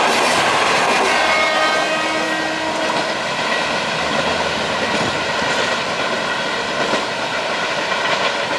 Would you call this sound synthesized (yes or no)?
no